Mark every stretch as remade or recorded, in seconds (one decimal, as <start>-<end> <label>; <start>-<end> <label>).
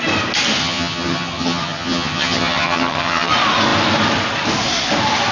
0.0-0.6 recorded; 0.6-3.3 remade; 3.3-5.3 recorded